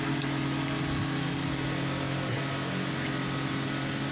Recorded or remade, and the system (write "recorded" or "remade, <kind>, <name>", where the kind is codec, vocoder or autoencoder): recorded